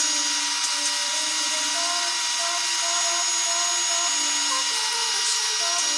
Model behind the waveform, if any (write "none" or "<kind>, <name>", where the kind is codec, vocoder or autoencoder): none